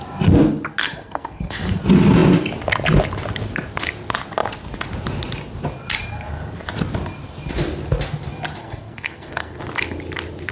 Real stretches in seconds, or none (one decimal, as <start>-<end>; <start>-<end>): 0.0-0.8; 1.8-8.6; 9.6-10.5